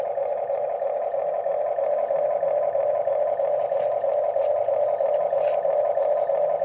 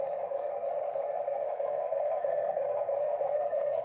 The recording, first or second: first